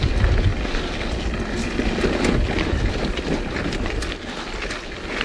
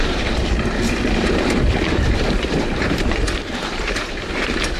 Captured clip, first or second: first